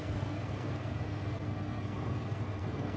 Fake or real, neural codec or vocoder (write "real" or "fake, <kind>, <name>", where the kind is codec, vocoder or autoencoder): fake, codec, SNAC